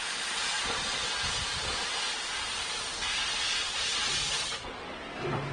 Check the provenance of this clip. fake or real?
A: real